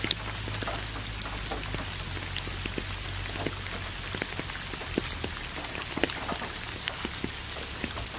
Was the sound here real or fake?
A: real